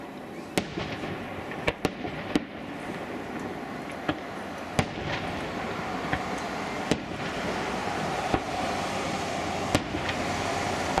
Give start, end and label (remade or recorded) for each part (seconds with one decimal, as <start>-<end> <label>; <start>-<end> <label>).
0.0-0.8 recorded; 0.8-1.7 remade; 1.7-7.8 recorded; 7.8-8.5 remade; 8.5-11.0 recorded